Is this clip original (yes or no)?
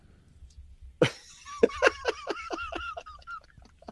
yes